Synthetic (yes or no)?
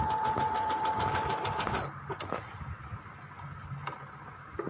no